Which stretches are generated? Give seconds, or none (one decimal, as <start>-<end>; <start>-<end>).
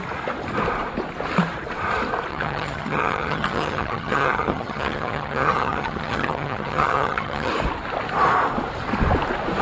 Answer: 2.3-7.5